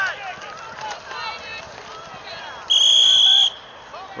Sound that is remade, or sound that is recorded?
recorded